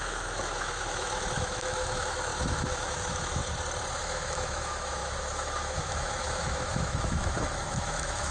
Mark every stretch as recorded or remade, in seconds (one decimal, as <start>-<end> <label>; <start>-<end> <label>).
0.0-3.4 remade; 3.4-4.0 recorded; 4.0-8.3 remade